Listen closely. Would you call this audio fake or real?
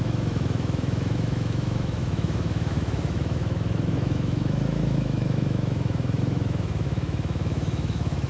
fake